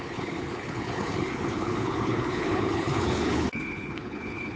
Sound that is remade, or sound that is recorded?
remade